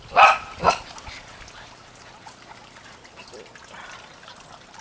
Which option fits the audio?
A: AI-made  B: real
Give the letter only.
B